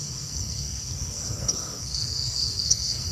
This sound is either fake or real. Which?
fake